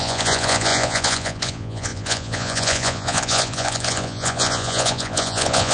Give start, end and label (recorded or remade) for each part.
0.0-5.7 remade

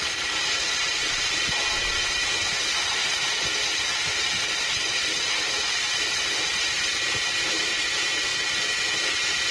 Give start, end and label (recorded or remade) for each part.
0.0-3.0 remade; 3.0-6.0 recorded; 6.0-8.3 remade; 8.3-9.1 recorded; 9.1-9.5 remade

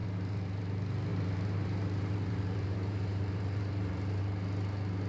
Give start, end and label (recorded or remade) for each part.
0.0-0.7 remade; 0.7-1.1 recorded; 1.1-4.2 remade; 4.2-5.1 recorded

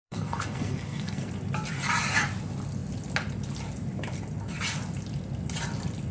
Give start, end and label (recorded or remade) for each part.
0.0-1.3 remade; 1.3-6.1 recorded